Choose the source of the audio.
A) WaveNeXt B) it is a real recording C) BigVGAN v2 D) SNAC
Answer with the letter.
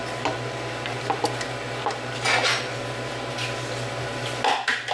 B